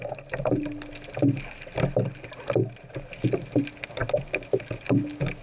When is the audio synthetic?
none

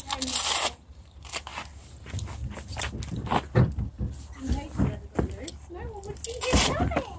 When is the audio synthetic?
none

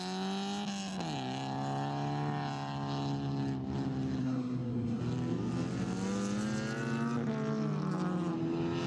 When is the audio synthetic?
4.2-5.0